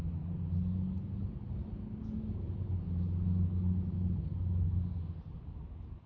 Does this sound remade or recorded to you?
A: recorded